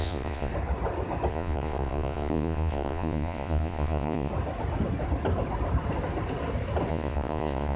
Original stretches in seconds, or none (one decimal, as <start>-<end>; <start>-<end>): 0.5-1.3; 4.3-6.9